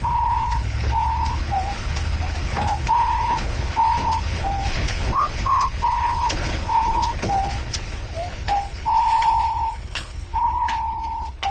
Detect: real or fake fake